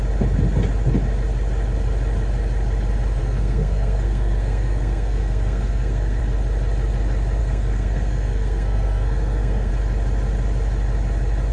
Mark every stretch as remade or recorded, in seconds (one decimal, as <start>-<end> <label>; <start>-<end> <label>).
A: 0.0-3.2 recorded; 3.2-6.2 remade; 6.2-7.4 recorded; 7.4-9.7 remade; 9.7-11.5 recorded